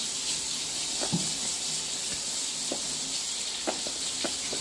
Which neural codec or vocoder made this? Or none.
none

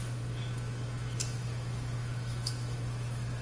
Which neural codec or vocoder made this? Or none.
autoencoder, DAC-VAE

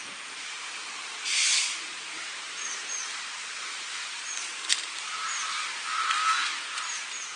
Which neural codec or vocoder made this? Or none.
vocoder, BigVGAN v2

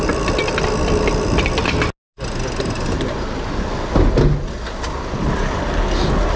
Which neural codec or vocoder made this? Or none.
none